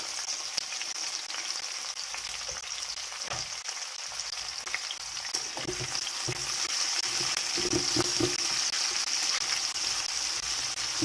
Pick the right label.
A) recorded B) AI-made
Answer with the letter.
A